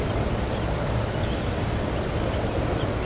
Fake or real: real